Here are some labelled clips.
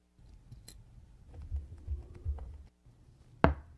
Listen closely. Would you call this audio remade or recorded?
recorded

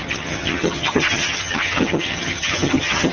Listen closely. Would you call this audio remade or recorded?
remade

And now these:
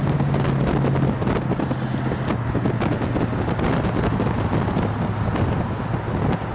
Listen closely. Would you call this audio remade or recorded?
recorded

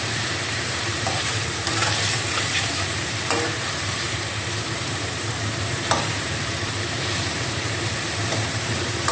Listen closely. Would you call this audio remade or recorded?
remade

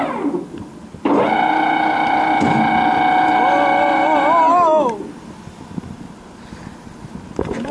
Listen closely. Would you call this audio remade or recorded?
recorded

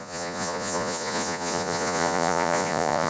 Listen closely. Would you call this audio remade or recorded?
remade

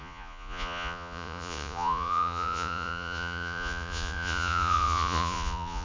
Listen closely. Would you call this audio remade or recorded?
remade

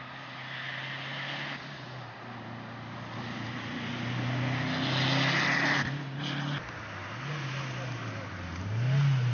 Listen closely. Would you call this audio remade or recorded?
recorded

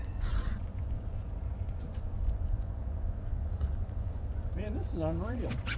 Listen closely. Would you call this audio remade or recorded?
remade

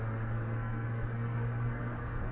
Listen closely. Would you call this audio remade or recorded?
remade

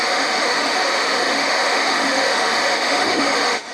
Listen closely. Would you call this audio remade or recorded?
remade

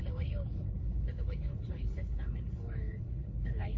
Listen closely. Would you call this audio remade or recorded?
remade